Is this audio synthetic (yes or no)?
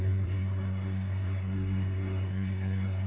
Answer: yes